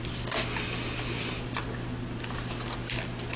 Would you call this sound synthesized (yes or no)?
no